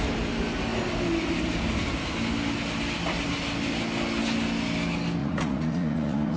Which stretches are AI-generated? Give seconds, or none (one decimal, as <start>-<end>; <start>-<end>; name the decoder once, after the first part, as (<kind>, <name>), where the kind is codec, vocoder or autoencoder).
5.2-6.4 (vocoder, Vocos)